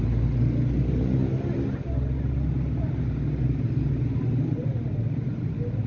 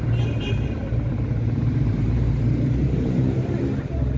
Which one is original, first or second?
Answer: first